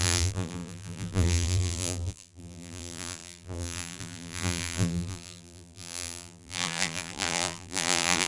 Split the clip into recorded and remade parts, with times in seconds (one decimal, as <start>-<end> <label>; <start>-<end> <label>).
0.0-8.3 remade